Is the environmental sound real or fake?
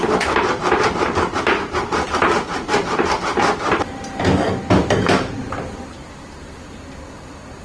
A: fake